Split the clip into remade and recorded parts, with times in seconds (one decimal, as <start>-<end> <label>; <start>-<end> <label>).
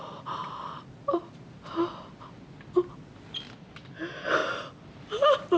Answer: 0.0-5.6 recorded